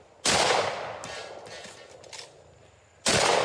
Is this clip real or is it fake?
real